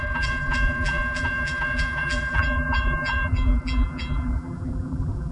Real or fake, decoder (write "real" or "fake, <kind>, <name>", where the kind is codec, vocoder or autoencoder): fake, vocoder, BigVGAN v2